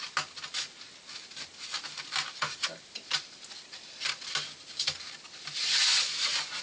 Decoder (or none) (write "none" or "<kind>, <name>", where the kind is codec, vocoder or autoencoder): none